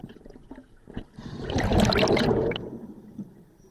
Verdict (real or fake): real